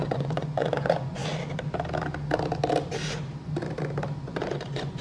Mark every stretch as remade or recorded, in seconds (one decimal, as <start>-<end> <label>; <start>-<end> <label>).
0.0-1.2 remade; 1.2-4.2 recorded; 4.2-5.0 remade